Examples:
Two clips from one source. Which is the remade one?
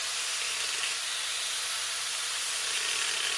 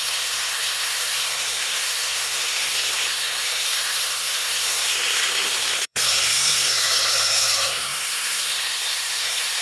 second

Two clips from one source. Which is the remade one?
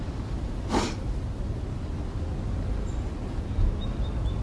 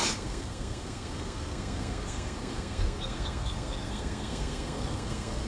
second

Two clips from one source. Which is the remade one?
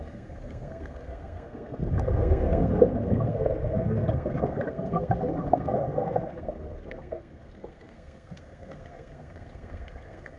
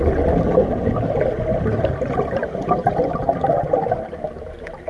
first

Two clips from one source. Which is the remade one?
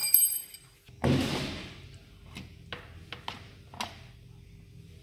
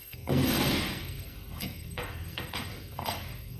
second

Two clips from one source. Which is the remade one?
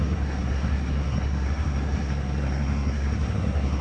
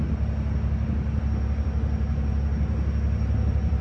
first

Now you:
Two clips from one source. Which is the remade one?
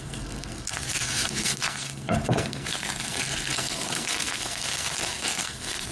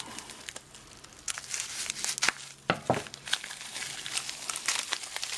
first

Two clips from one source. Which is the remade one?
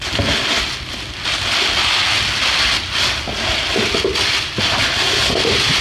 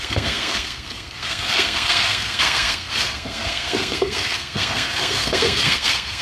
second